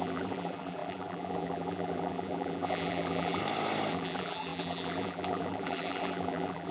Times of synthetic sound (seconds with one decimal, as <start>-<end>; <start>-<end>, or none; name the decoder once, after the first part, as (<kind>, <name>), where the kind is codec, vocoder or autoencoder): 0.0-3.4 (vocoder, BigVGAN v2); 3.9-6.7